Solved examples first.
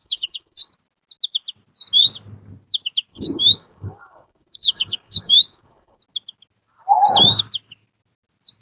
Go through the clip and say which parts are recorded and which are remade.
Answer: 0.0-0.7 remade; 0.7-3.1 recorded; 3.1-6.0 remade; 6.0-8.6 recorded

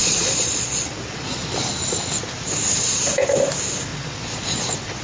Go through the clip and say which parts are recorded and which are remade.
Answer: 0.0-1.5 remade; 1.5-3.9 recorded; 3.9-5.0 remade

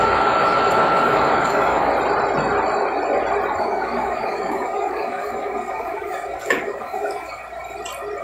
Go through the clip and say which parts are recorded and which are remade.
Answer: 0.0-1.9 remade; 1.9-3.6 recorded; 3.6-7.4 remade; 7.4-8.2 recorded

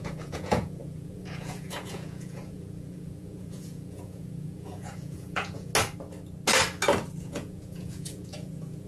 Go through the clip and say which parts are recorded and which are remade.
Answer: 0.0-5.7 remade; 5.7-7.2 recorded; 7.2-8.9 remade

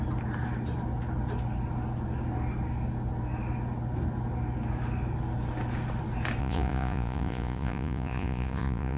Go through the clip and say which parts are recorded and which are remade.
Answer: 0.0-6.4 recorded; 6.4-9.0 remade

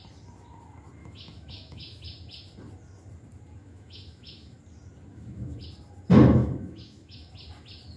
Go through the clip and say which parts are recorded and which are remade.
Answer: 0.0-1.0 recorded; 1.0-2.0 remade; 2.0-3.6 recorded; 3.6-4.6 remade; 4.6-5.1 recorded; 5.1-5.6 remade; 5.6-6.4 recorded; 6.4-7.3 remade; 7.3-8.0 recorded